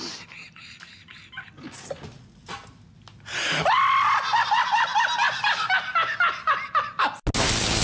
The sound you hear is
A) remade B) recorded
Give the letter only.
B